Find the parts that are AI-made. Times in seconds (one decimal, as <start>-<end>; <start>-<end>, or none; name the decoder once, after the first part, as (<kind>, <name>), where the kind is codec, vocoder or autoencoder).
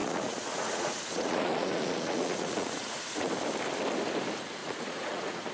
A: 0.0-3.3 (vocoder, Vocos); 4.6-5.5